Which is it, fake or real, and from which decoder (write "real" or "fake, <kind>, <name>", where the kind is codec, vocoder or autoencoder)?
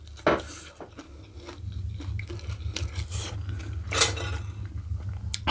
real